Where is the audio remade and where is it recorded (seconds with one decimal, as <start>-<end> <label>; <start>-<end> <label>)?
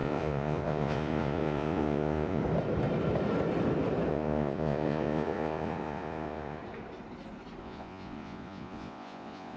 0.0-2.4 remade; 2.4-4.1 recorded; 4.1-6.6 remade; 6.6-7.6 recorded; 7.6-9.6 remade